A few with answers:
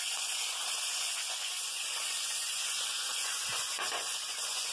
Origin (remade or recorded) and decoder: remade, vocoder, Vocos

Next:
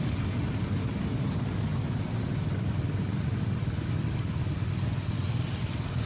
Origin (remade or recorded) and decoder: recorded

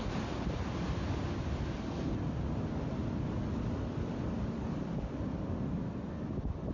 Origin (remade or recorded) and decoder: recorded